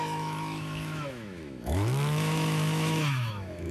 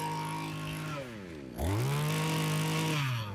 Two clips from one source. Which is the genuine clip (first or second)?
second